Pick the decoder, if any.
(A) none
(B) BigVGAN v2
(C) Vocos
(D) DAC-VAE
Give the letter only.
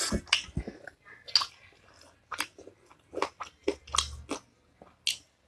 A